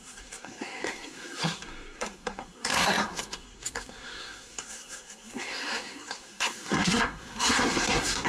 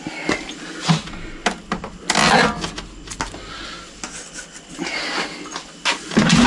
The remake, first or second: first